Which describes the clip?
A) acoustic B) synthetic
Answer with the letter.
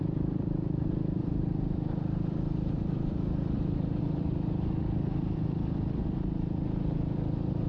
B